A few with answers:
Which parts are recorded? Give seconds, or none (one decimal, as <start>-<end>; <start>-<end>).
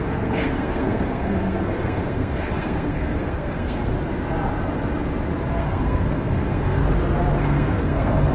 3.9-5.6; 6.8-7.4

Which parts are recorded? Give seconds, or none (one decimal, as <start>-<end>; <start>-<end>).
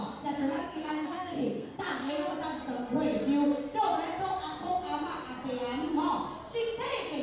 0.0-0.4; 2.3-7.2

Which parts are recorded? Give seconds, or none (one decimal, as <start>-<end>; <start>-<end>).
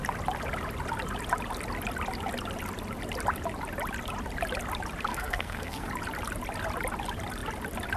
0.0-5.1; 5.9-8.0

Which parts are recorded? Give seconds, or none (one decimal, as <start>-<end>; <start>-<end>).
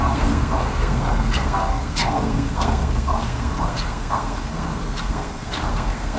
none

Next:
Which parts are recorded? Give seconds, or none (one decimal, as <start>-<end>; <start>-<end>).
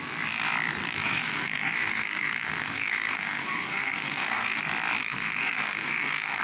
0.0-0.8; 4.6-5.0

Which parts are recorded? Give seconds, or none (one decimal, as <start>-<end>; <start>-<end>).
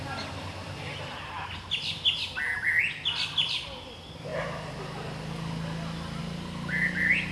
0.0-7.3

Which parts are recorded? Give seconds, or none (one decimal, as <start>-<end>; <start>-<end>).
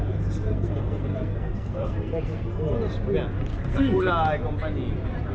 0.0-0.5; 2.8-3.5; 4.1-5.3